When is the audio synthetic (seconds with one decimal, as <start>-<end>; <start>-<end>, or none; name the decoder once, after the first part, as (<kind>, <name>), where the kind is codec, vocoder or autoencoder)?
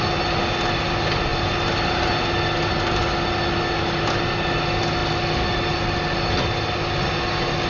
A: none